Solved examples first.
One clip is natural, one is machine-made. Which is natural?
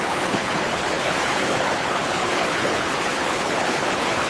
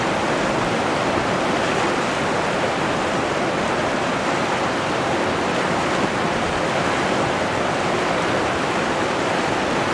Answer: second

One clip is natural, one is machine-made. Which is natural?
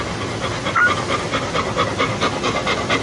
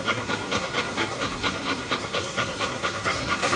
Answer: first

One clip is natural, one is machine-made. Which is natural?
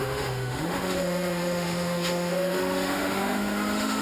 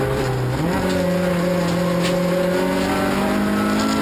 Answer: second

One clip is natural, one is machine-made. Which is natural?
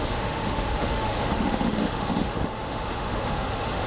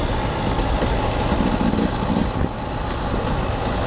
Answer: second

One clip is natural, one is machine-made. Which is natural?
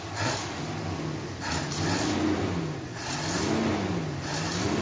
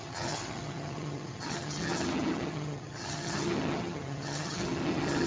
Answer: first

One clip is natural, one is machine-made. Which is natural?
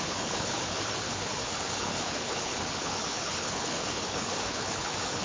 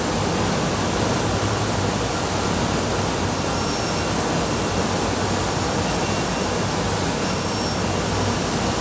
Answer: second